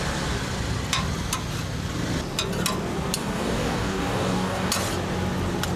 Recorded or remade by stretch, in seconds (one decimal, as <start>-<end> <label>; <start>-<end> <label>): 0.0-3.2 recorded; 3.2-4.7 remade; 4.7-5.8 recorded